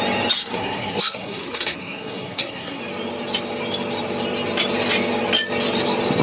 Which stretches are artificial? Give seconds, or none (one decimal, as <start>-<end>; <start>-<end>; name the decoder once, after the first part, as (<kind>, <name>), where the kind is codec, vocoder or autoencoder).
0.4-2.8 (codec, SNAC)